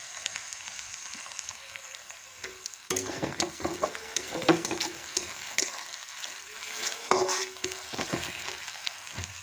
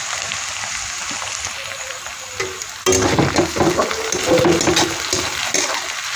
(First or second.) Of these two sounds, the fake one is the first